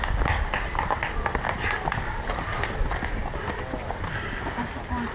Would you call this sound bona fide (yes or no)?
yes